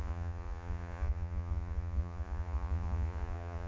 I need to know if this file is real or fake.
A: fake